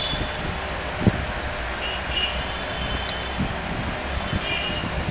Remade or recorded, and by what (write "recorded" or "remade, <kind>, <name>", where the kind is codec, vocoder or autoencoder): recorded